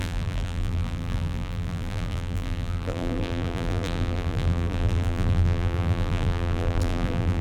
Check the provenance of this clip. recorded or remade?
remade